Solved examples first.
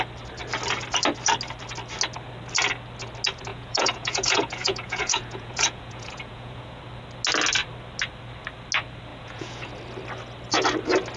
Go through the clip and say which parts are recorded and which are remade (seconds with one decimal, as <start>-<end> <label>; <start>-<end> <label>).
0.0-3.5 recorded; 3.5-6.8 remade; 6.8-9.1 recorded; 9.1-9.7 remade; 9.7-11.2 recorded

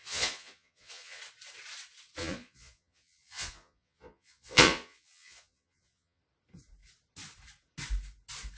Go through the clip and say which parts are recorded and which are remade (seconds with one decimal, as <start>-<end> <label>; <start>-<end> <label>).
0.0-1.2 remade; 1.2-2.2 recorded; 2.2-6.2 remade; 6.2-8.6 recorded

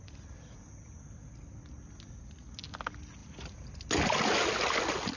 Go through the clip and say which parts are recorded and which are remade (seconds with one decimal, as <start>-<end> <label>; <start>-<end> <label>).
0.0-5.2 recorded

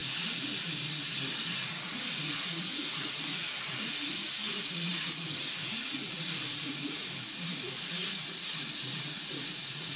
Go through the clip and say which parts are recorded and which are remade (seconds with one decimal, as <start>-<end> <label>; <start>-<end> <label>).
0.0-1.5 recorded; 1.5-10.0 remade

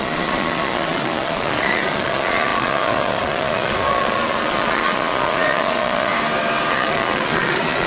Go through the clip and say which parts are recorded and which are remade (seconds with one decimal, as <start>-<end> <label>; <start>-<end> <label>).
0.0-6.1 remade; 6.1-6.7 recorded; 6.7-7.9 remade

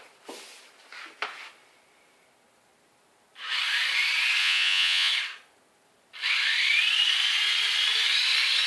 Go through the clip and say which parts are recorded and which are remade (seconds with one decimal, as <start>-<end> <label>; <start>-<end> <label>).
0.0-4.4 recorded; 4.4-5.1 remade; 5.1-8.7 recorded

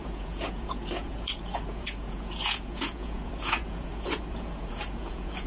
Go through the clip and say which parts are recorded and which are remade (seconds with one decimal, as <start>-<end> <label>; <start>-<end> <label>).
0.0-5.5 remade

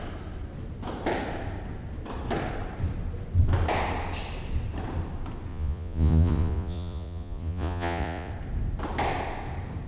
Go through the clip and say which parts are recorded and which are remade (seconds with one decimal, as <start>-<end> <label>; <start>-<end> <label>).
0.0-5.5 recorded; 5.5-8.3 remade; 8.3-9.9 recorded